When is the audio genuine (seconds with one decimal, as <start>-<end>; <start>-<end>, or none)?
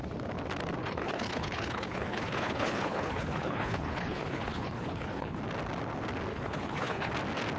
0.0-0.8; 5.4-6.3; 7.1-7.6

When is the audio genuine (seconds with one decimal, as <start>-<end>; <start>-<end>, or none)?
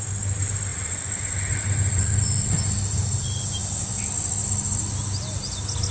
0.0-5.9